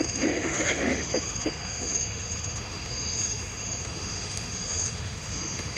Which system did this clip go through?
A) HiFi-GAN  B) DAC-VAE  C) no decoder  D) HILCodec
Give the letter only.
B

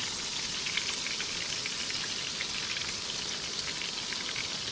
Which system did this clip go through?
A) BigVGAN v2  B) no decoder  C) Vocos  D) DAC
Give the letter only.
B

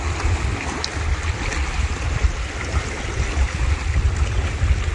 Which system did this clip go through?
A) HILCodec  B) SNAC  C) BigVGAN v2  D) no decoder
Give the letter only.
D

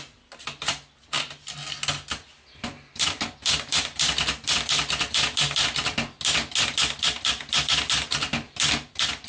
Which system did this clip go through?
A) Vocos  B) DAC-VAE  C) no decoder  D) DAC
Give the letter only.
C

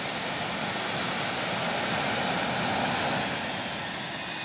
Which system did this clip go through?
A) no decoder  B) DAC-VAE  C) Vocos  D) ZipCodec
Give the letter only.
A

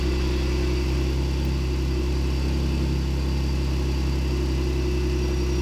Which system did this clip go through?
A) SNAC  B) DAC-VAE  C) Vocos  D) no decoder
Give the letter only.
D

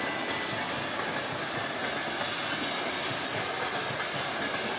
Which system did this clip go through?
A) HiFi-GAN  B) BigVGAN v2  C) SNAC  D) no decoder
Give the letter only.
D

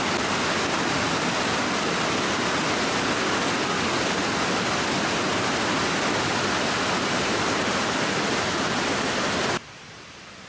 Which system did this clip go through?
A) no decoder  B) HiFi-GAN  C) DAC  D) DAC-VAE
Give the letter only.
A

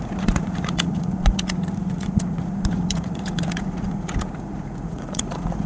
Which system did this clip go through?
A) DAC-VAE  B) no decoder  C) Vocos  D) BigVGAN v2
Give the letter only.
C